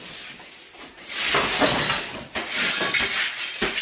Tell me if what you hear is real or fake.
real